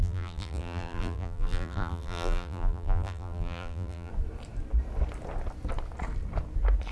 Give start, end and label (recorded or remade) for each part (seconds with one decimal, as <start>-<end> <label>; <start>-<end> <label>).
0.0-4.1 remade; 4.1-6.9 recorded